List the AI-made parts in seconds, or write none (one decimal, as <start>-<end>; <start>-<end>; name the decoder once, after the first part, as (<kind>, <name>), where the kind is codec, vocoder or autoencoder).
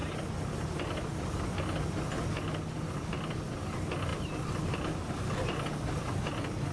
none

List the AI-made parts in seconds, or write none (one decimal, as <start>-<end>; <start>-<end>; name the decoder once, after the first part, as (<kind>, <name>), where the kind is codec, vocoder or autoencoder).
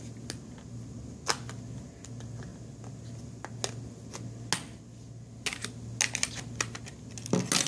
none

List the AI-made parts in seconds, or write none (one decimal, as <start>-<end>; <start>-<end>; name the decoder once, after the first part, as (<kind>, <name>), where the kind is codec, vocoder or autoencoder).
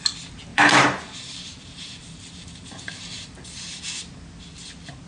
0.5-3.6 (vocoder, BigVGAN v2)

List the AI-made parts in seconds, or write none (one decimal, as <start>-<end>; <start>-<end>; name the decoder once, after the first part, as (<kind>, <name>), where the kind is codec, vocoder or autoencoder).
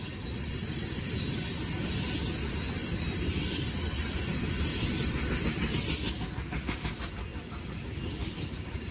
2.8-4.0 (vocoder, BigVGAN v2); 4.7-5.7; 7.3-8.9